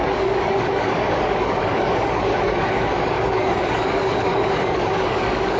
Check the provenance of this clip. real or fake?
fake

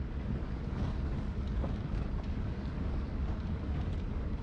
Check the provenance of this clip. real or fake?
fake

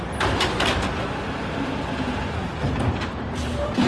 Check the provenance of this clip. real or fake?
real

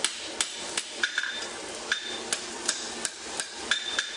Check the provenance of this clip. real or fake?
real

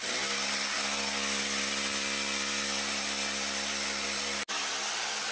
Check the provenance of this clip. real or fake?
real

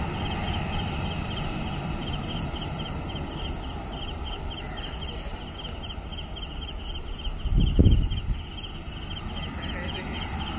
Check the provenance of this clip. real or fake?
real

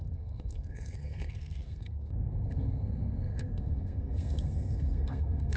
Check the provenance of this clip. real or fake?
fake